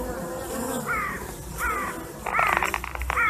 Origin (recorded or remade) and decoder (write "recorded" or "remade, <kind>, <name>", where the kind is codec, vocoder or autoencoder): recorded